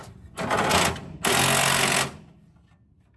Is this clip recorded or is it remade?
recorded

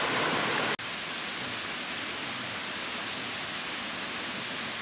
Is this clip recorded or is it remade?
recorded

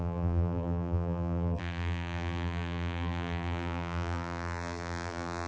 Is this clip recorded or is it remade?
remade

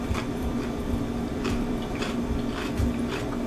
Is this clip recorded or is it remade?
remade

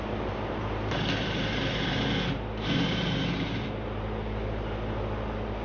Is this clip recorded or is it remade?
recorded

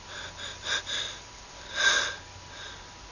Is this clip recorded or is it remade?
recorded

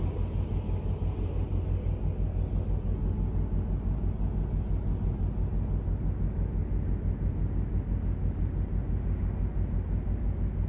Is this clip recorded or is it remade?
recorded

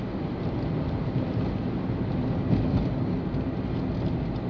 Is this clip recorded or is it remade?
recorded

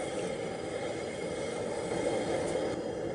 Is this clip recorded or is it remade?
recorded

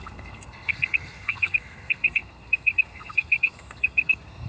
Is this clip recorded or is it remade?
remade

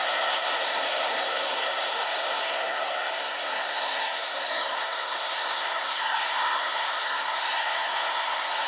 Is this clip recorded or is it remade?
remade